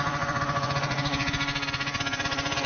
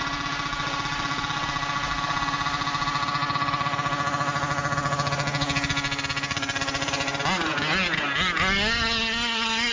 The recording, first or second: second